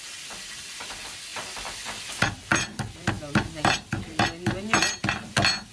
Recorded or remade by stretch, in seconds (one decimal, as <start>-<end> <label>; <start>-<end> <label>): 0.0-5.7 recorded